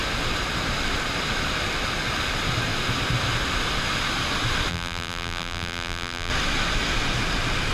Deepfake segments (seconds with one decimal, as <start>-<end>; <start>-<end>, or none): 4.7-6.3